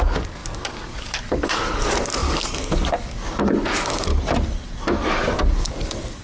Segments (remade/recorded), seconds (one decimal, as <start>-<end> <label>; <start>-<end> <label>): 0.0-4.1 remade; 4.1-5.4 recorded; 5.4-6.2 remade